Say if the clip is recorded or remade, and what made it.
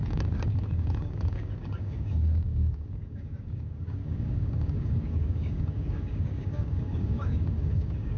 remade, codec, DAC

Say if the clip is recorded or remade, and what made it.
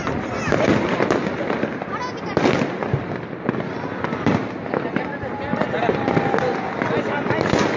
recorded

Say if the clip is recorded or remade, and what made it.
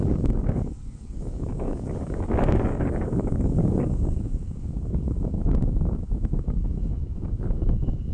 remade, codec, DAC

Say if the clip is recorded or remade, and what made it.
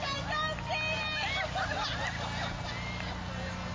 recorded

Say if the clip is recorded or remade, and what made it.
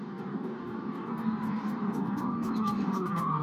remade, codec, DAC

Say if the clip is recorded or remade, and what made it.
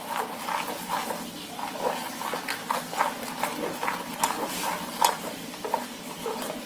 recorded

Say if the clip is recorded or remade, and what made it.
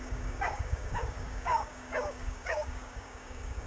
remade, codec, DAC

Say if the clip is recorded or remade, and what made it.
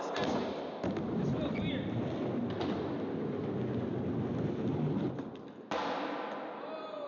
recorded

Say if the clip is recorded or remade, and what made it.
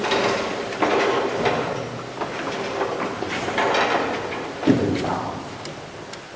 recorded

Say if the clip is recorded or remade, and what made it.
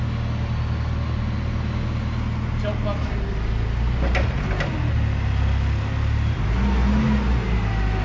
recorded